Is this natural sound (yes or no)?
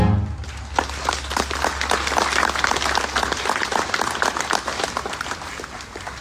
yes